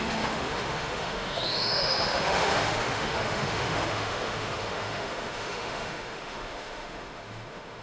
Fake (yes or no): yes